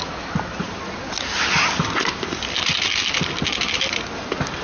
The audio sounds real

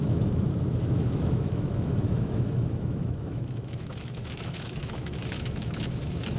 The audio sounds fake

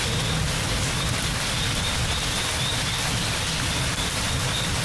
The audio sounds real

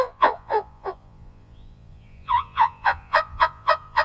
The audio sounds fake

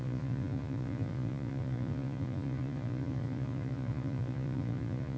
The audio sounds fake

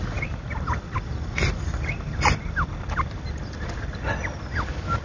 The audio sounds real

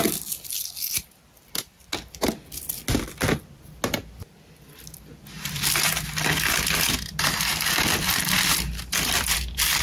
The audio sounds real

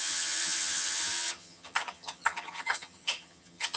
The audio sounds fake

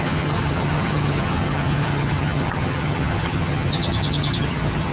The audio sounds fake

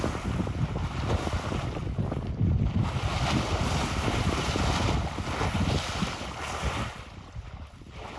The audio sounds real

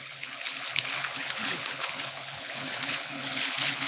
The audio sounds fake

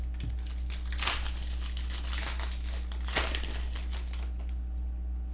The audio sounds real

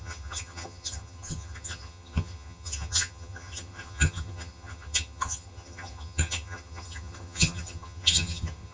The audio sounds fake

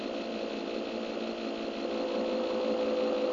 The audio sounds real